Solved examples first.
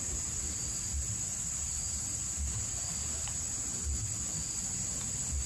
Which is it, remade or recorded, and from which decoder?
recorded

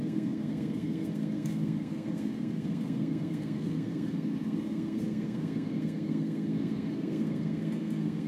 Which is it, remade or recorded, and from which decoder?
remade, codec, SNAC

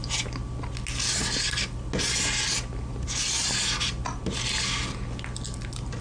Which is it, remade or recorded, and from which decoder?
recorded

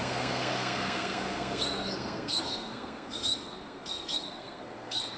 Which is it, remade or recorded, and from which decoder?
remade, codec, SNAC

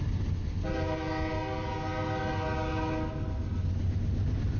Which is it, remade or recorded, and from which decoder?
recorded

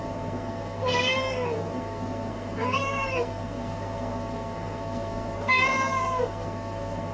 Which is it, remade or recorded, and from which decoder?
remade, codec, SNAC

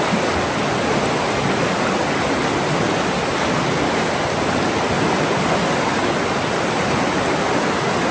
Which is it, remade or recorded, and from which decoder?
recorded